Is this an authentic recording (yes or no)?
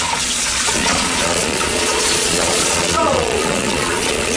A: no